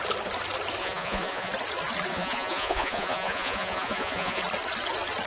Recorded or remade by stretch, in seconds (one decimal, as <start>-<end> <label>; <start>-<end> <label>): 0.0-0.8 recorded; 0.8-1.5 remade; 1.5-2.1 recorded; 2.1-4.4 remade; 4.4-5.3 recorded